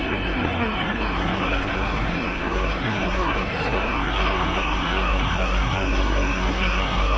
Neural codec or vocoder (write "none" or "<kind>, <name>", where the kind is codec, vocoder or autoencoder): codec, SNAC